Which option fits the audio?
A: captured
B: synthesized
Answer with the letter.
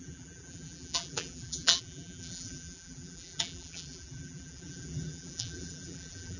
B